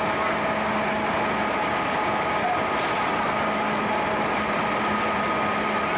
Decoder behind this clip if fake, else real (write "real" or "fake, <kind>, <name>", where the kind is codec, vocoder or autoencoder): real